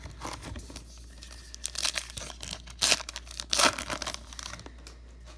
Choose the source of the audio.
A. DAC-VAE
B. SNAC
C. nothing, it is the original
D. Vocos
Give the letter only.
C